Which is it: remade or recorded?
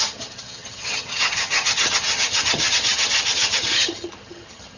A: remade